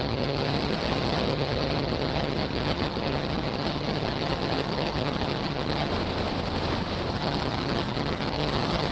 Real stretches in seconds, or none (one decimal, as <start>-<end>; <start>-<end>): 5.9-7.1